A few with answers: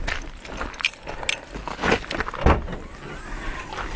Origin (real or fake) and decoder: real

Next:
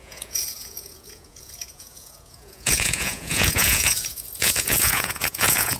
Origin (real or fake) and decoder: fake, vocoder, Vocos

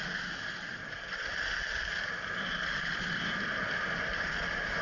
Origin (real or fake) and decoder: real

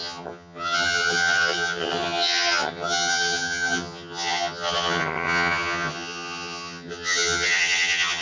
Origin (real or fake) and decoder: fake, vocoder, HiFi-GAN